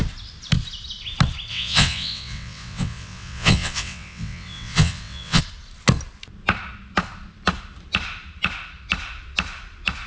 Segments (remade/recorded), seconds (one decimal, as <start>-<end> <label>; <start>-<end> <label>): 0.0-1.5 recorded; 1.5-5.4 remade; 5.4-10.1 recorded